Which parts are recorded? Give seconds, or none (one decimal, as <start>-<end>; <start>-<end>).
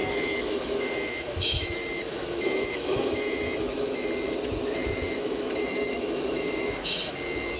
4.1-4.8; 7.1-7.6